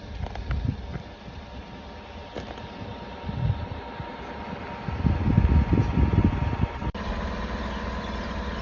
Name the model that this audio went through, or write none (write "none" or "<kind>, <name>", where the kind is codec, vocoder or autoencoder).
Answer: none